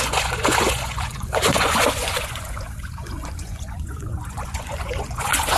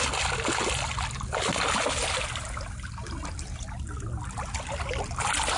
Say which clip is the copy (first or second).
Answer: first